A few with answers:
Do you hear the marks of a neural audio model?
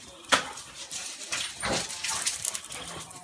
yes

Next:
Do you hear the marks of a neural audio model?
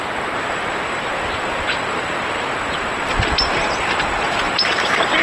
yes